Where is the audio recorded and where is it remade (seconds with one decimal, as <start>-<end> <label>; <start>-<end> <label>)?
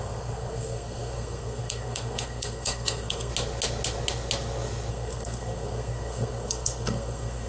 0.0-3.3 remade; 3.3-4.9 recorded; 4.9-7.5 remade